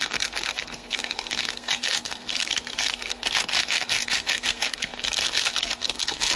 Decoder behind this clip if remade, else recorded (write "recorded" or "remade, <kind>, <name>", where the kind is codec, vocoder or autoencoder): remade, codec, SNAC